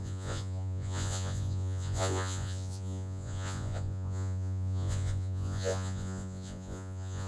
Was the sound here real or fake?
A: fake